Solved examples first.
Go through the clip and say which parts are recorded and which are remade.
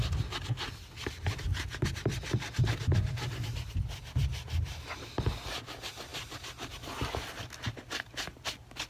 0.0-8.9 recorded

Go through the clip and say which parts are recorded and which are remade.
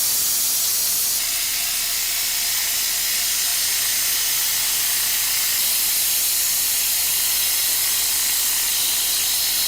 0.0-9.7 recorded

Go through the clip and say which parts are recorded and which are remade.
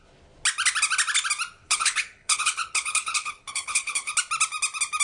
0.0-1.6 recorded; 1.6-4.1 remade; 4.1-5.0 recorded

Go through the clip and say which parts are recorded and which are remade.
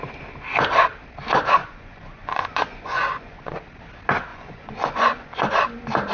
0.0-1.6 recorded; 1.6-3.6 remade; 3.6-4.3 recorded; 4.3-5.5 remade; 5.5-6.1 recorded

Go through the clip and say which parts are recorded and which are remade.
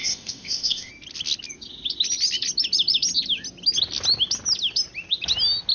0.0-0.9 remade; 0.9-5.7 recorded